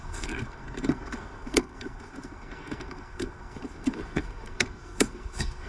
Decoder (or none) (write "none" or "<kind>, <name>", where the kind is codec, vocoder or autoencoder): codec, SNAC